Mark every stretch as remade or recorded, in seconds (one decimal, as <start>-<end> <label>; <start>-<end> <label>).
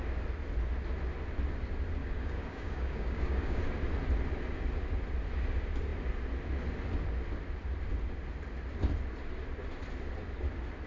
0.0-2.0 recorded; 2.0-3.6 remade; 3.6-10.9 recorded